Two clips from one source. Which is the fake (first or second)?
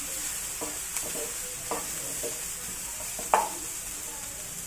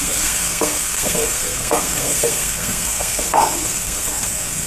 second